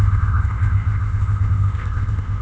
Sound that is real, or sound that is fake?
fake